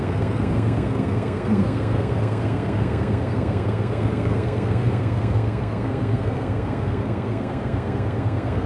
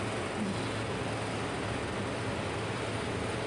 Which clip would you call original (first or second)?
second